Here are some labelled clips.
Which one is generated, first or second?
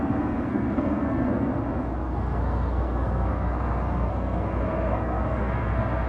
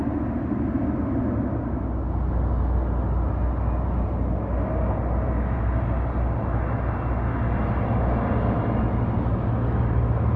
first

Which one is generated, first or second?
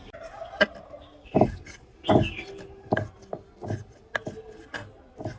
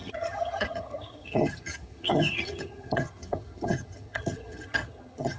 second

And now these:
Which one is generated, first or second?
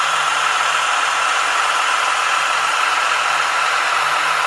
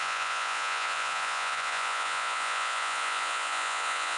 second